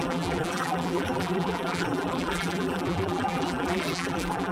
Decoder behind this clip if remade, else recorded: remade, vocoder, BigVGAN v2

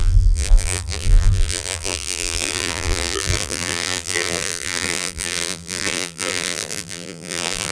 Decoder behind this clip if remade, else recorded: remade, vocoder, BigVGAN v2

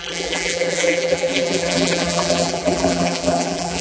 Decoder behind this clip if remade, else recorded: remade, vocoder, BigVGAN v2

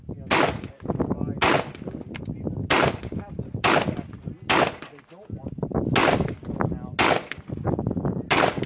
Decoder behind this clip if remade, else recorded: recorded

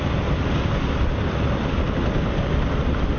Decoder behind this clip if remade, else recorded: recorded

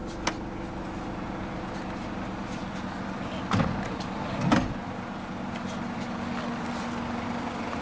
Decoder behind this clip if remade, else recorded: recorded